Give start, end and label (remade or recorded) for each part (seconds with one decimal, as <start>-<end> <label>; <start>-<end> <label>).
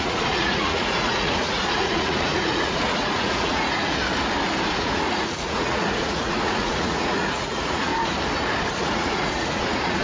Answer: 0.0-4.0 remade; 4.0-4.7 recorded; 4.7-7.9 remade; 7.9-8.8 recorded; 8.8-10.0 remade